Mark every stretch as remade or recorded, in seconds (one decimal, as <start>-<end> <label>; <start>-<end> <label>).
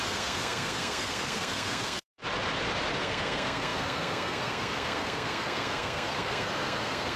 0.0-2.2 remade; 2.2-3.0 recorded; 3.0-7.2 remade